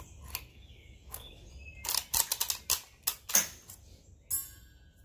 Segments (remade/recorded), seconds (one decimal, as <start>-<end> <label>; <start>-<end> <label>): 0.0-0.5 recorded; 0.5-1.5 remade; 1.5-5.0 recorded